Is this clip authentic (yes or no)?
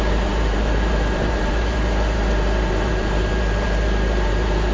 no